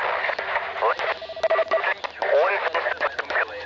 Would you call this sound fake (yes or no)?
no